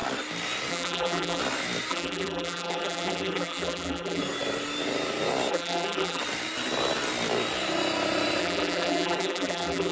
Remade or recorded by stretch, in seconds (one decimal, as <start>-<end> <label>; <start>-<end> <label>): 0.0-0.7 recorded; 0.7-1.4 remade; 1.4-1.9 recorded; 1.9-4.2 remade; 4.2-5.5 recorded; 5.5-6.2 remade; 6.2-8.4 recorded; 8.4-9.9 remade